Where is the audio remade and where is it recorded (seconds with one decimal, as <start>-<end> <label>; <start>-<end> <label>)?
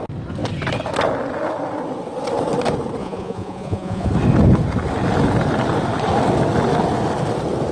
0.0-3.0 recorded; 3.0-4.1 remade; 4.1-7.7 recorded